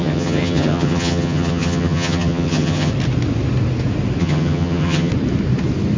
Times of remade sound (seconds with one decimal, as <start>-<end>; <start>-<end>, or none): 0.0-2.9; 4.2-5.1